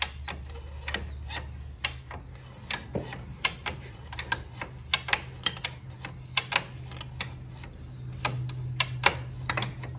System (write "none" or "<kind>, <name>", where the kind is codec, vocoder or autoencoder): none